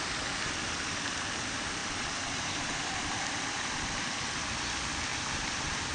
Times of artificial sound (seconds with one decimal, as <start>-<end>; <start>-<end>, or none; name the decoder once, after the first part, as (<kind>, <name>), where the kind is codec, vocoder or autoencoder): 1.8-4.3 (vocoder, BigVGAN v2); 5.1-5.9